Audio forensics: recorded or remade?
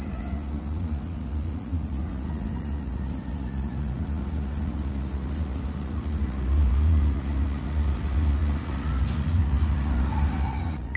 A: remade